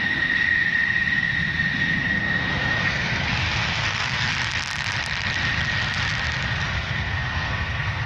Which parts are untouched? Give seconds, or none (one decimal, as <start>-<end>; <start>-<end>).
0.0-2.8; 4.3-6.7